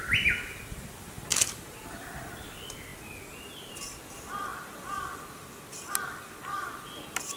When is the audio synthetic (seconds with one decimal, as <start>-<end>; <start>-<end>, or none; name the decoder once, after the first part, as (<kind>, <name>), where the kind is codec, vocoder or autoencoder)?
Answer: none